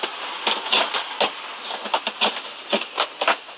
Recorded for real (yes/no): yes